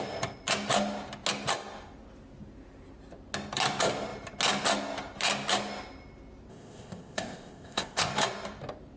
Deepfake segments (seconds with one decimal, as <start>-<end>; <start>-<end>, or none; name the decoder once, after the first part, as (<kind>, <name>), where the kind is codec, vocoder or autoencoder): 6.5-8.1 (codec, ZipCodec)